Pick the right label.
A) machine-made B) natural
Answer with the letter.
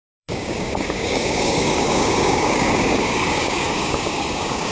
A